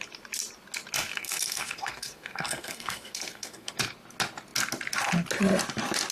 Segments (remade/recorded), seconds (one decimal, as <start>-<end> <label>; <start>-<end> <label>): 0.0-1.1 recorded; 1.1-3.7 remade; 3.7-6.1 recorded